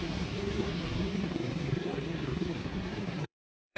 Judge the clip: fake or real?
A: fake